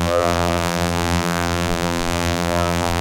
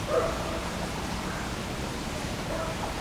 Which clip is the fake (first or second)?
first